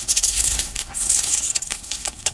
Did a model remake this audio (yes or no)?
yes